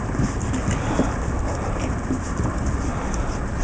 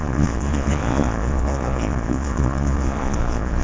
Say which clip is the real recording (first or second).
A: first